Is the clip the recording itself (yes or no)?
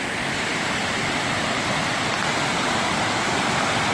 yes